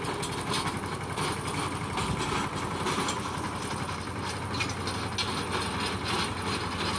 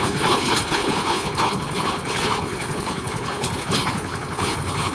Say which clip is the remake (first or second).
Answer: second